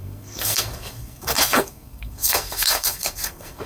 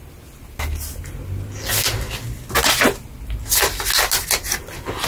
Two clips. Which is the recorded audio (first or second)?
second